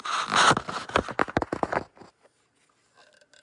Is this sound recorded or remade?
recorded